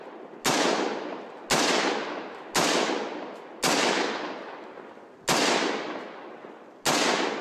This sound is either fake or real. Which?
real